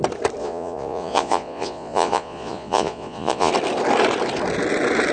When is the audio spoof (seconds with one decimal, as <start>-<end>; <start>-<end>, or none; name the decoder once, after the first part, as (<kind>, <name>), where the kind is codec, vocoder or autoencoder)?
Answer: 0.4-3.5 (vocoder, Vocos)